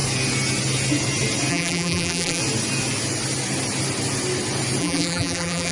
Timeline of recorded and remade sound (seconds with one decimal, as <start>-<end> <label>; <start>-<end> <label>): 0.0-1.5 recorded; 1.5-2.4 remade; 2.4-4.8 recorded; 4.8-5.7 remade

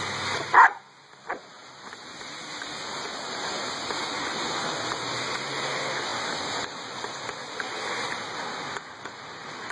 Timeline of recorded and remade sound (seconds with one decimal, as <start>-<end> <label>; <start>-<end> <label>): 0.0-9.7 recorded

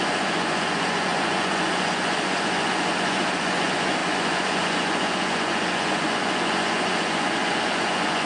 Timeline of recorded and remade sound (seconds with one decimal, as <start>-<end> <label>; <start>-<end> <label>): 0.0-8.3 remade

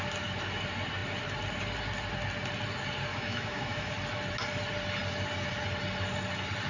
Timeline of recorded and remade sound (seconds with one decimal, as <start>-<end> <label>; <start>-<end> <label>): 0.0-3.1 recorded; 3.1-3.9 remade; 3.9-6.7 recorded